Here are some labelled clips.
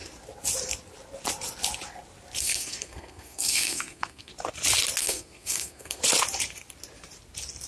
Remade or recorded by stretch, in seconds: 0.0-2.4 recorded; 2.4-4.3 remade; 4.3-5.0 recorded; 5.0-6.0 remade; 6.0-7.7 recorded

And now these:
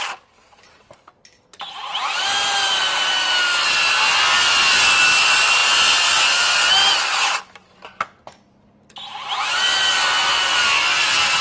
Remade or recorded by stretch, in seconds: 0.0-11.4 recorded

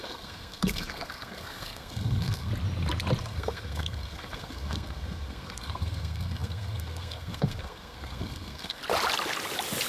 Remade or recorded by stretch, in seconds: 0.0-2.5 remade; 2.5-3.2 recorded; 3.2-8.8 remade; 8.8-9.9 recorded

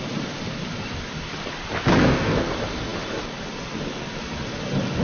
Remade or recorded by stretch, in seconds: 0.0-2.0 recorded; 2.0-2.5 remade; 2.5-5.0 recorded

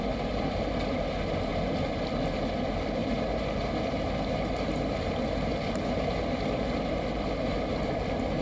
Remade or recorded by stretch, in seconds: 0.0-8.4 recorded

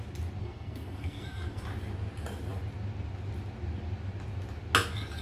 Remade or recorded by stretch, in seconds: 0.0-0.4 recorded; 0.4-1.6 remade; 1.6-5.2 recorded

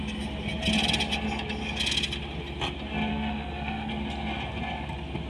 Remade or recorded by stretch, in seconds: 0.0-3.1 recorded; 3.1-3.9 remade; 3.9-5.3 recorded

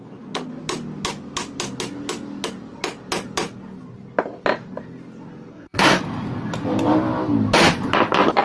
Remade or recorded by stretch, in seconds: 0.0-5.5 recorded; 5.5-6.0 remade; 6.0-8.4 recorded